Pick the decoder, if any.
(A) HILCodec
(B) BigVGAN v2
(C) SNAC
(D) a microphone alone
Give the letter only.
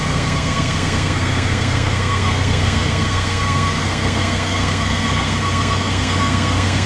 C